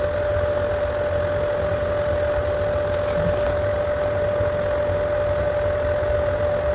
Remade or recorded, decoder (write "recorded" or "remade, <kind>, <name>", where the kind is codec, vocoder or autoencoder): recorded